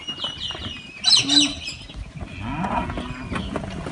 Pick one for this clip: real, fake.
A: real